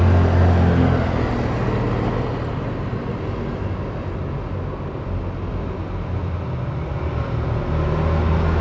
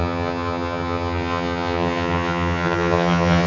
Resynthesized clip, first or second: second